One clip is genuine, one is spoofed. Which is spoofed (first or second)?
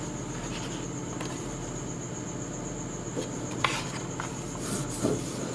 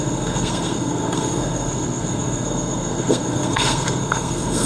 second